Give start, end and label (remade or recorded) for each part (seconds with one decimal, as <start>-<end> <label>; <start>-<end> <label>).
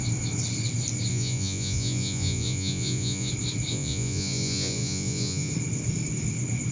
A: 0.0-1.1 recorded; 1.1-3.3 remade; 3.3-3.7 recorded; 3.7-5.5 remade; 5.5-6.7 recorded